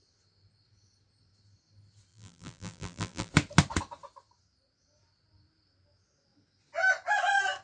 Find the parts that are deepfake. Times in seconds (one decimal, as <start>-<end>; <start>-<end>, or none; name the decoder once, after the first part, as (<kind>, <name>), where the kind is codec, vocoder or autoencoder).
2.1-3.3 (vocoder, BigVGAN v2)